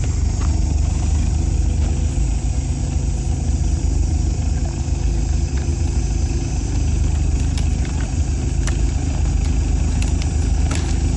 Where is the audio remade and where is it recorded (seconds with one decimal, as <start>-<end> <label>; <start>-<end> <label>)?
0.0-11.2 recorded